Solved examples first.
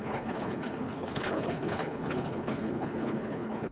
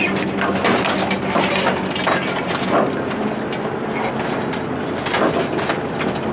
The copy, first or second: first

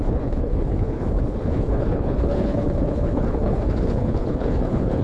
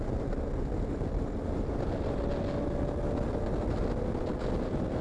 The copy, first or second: first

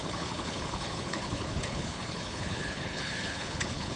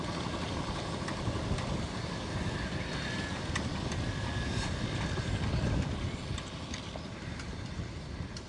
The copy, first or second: first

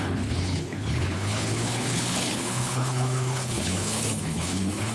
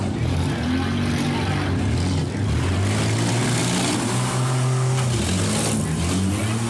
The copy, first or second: first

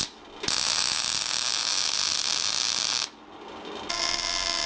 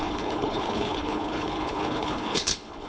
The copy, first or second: second